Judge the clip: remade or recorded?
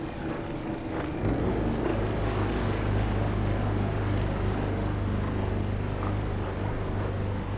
recorded